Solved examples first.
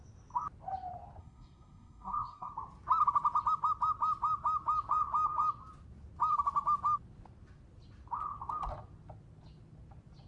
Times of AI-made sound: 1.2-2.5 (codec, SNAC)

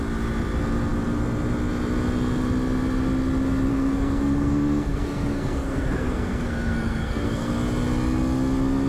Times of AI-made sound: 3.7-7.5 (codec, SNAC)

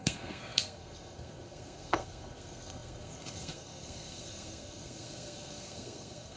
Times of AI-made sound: 0.0-6.4 (codec, SNAC)

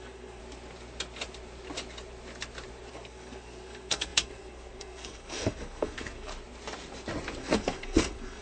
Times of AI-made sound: 0.0-0.4 (codec, SNAC); 2.9-6.3; 7.4-8.4